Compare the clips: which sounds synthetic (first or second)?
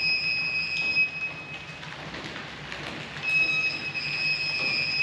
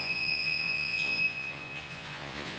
second